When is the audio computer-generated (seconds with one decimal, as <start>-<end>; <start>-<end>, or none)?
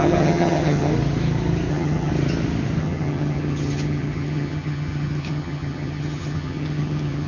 0.0-0.9; 1.7-2.1; 2.8-7.3